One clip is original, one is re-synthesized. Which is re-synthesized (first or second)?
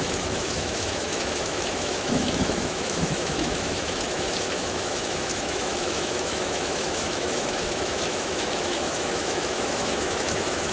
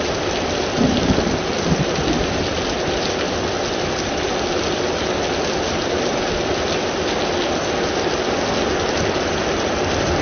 first